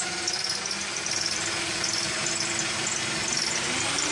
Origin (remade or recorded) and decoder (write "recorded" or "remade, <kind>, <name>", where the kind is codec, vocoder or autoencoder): recorded